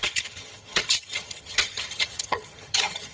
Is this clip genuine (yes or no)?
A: no